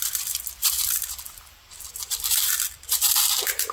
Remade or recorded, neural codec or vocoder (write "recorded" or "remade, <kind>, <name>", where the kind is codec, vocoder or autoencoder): remade, vocoder, BigVGAN v2